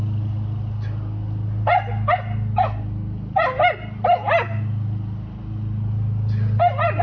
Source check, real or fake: real